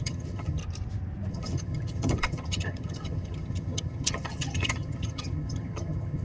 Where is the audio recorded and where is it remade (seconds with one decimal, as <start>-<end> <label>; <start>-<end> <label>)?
0.0-0.6 remade; 0.6-1.3 recorded; 1.3-6.2 remade